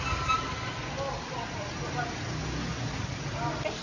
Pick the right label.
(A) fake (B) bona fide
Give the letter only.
B